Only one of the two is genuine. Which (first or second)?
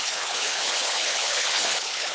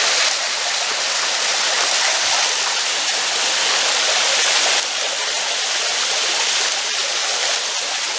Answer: second